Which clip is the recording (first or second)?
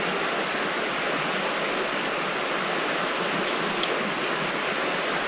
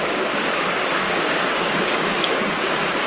first